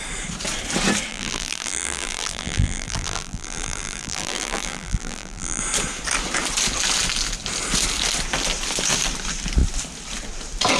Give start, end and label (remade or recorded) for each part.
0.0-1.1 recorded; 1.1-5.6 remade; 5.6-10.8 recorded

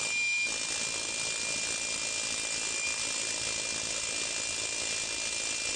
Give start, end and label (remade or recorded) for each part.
0.0-5.8 recorded

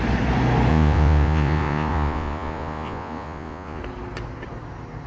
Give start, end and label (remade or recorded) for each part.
0.0-0.7 recorded; 0.7-3.8 remade; 3.8-5.1 recorded